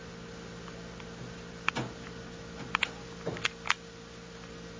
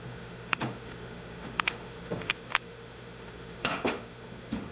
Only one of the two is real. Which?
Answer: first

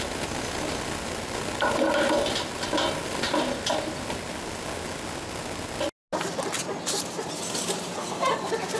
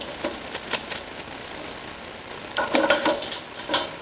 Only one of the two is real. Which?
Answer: first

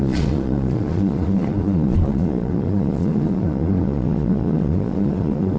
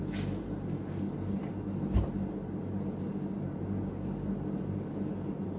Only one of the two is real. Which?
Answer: second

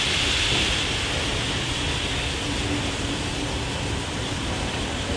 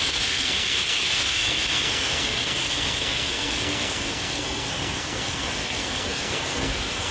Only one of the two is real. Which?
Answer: first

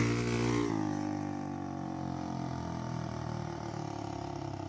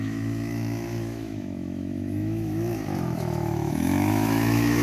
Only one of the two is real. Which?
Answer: first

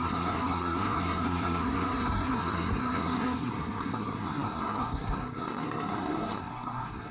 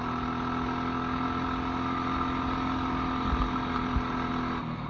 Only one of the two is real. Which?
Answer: second